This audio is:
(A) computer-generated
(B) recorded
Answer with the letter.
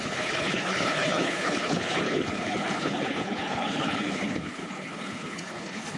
A